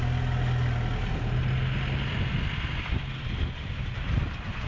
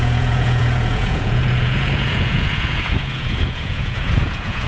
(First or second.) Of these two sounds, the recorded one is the first